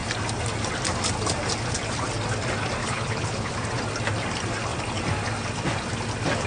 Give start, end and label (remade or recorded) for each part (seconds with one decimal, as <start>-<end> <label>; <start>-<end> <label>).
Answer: 0.0-2.8 recorded; 2.8-3.5 remade; 3.5-6.5 recorded